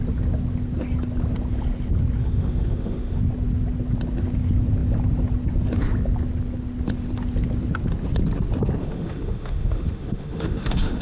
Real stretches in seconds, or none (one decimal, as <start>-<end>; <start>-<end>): 0.0-2.2; 3.2-8.8